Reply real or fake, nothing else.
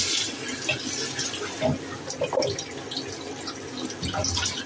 real